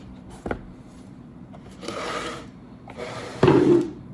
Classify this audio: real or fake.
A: fake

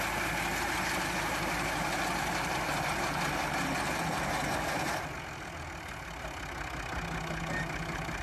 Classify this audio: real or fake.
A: real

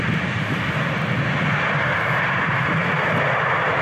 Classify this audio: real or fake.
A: fake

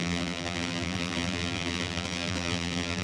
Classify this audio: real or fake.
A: fake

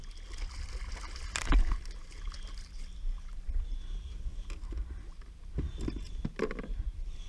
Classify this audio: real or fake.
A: real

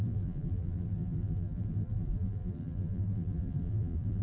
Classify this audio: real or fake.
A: fake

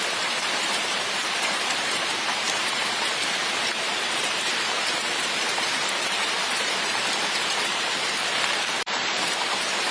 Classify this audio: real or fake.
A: fake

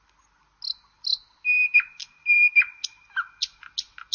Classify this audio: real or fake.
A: real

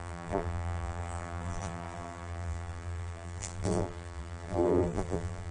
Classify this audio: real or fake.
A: fake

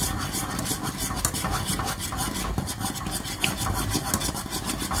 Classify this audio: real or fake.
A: real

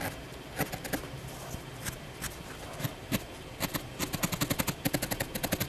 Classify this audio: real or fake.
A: real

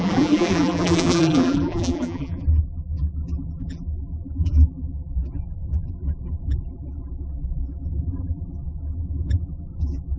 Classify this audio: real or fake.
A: fake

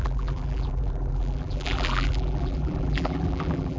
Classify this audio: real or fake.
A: fake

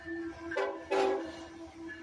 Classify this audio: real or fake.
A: fake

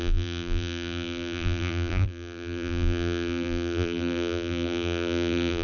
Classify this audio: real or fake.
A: fake